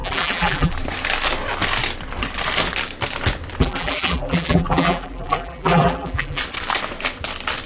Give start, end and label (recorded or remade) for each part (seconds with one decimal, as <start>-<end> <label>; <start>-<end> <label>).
0.0-0.7 remade; 0.7-3.6 recorded; 3.6-6.4 remade; 6.4-7.7 recorded